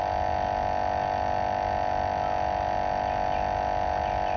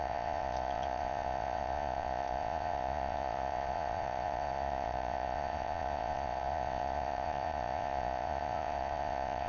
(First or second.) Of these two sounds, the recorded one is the first